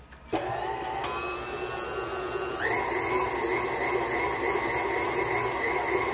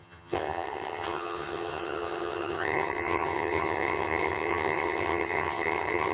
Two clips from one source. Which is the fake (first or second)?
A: second